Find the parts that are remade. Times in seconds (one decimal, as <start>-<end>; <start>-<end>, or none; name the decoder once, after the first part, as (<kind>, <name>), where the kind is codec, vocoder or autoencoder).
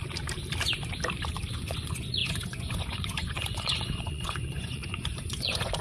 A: 1.5-5.8 (vocoder, Vocos)